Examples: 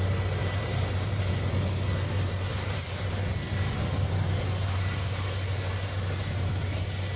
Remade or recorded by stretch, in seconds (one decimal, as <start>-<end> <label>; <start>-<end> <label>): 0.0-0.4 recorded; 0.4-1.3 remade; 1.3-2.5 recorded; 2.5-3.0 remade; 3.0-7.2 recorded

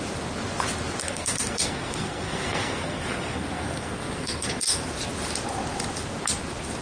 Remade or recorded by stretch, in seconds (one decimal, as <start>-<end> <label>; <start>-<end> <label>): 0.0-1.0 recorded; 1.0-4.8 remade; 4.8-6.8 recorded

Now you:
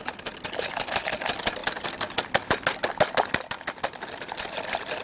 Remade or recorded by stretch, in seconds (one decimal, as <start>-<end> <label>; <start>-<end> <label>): 0.0-5.0 recorded